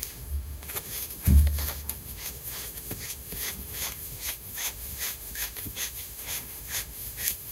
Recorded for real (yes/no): no